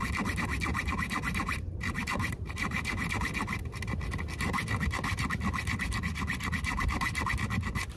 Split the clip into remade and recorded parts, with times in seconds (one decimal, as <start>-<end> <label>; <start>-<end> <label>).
0.0-0.7 recorded; 0.7-3.1 remade; 3.1-8.0 recorded